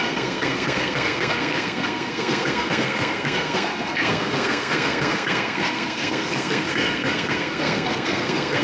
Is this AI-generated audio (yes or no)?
yes